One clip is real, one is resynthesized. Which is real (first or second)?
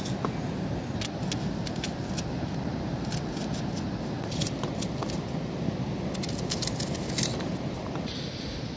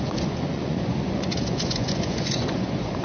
first